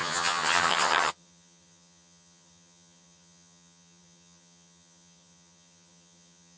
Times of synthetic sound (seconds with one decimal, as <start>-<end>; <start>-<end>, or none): 0.0-6.6